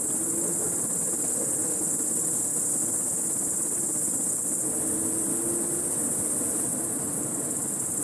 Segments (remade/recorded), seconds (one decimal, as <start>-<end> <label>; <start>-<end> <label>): 0.0-6.0 recorded; 6.0-7.4 remade; 7.4-8.0 recorded